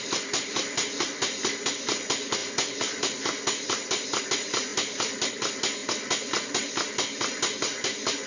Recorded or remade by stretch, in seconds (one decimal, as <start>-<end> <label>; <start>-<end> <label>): 0.0-2.4 recorded; 2.4-4.2 remade; 4.2-4.7 recorded; 4.7-5.3 remade; 5.3-8.3 recorded

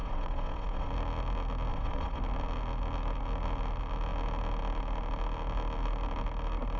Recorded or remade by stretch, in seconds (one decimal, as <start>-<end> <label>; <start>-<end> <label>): 0.0-0.9 remade; 0.9-1.7 recorded; 1.7-2.2 remade; 2.2-6.8 recorded

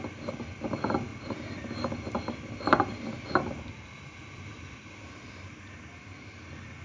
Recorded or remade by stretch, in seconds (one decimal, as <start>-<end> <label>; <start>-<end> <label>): 0.0-1.1 recorded; 1.1-5.2 remade; 5.2-6.8 recorded

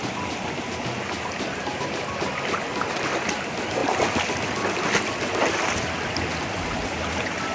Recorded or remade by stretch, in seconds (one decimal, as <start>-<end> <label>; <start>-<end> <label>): 0.0-7.5 recorded

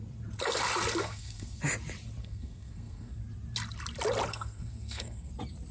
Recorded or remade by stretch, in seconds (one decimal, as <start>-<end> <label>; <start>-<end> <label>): 0.0-1.0 recorded; 1.0-1.6 remade; 1.6-2.2 recorded; 2.2-3.2 remade; 3.2-4.3 recorded; 4.3-5.3 remade; 5.3-5.7 recorded

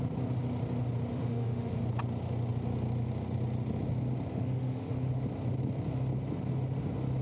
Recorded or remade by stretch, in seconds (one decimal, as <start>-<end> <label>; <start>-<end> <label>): 0.0-1.1 recorded; 1.1-1.8 remade; 1.8-4.3 recorded; 4.3-5.1 remade; 5.1-7.2 recorded

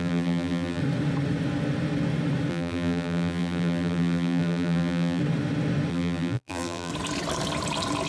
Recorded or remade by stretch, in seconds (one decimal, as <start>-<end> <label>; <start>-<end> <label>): 0.0-0.8 remade; 0.8-2.5 recorded; 2.5-5.2 remade; 5.2-5.9 recorded; 5.9-6.9 remade; 6.9-8.1 recorded

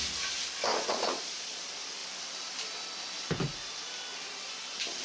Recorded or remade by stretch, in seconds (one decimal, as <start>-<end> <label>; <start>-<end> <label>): 0.0-0.7 recorded; 0.7-1.6 remade; 1.6-5.0 recorded